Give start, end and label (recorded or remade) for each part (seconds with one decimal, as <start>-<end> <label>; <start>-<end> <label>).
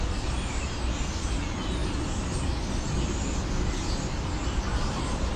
0.0-4.4 recorded; 4.4-5.0 remade; 5.0-5.4 recorded